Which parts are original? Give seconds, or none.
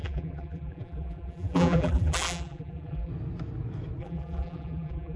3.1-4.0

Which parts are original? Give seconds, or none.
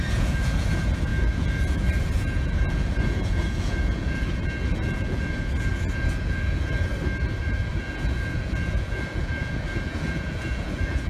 6.9-7.4